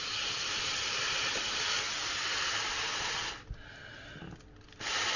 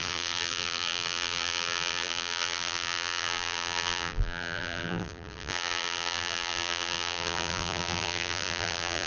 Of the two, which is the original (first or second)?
first